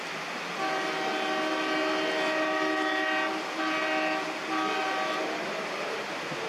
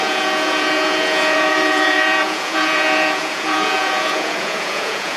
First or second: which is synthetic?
second